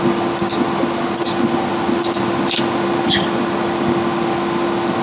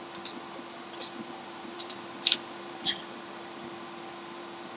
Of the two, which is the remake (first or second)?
second